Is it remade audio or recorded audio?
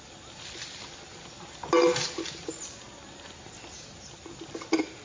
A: recorded